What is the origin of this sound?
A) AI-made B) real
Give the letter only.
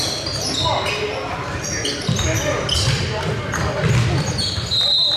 B